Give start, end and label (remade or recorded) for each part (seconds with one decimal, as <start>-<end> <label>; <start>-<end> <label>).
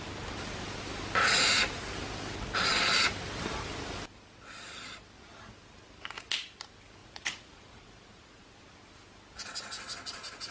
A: 0.0-7.0 recorded; 7.0-8.5 remade; 8.5-10.5 recorded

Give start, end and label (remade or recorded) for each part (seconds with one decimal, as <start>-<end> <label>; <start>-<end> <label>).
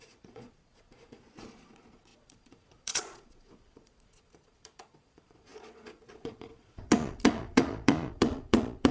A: 0.0-8.9 remade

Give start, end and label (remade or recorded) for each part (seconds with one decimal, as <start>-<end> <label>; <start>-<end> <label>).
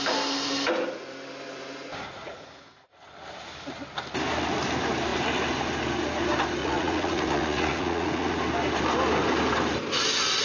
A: 0.0-1.9 recorded; 1.9-3.1 remade; 3.1-6.6 recorded; 6.6-8.4 remade; 8.4-10.4 recorded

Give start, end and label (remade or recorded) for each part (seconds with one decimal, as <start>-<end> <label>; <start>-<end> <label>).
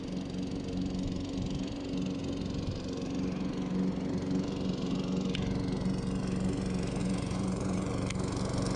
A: 0.0-7.0 recorded; 7.0-7.9 remade; 7.9-8.8 recorded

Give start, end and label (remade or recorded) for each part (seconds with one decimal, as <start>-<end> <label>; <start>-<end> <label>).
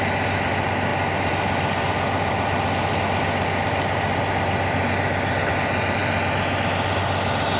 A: 0.0-7.6 recorded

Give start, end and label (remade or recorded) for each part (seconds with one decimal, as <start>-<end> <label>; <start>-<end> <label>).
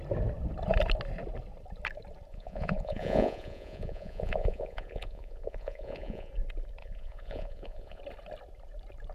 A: 0.0-2.3 recorded; 2.3-6.3 remade; 6.3-6.8 recorded; 6.8-8.0 remade; 8.0-9.1 recorded